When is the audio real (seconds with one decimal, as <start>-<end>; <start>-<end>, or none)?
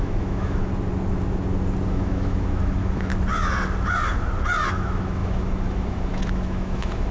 0.7-1.9; 3.1-4.7